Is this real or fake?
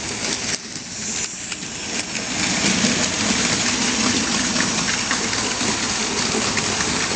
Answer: real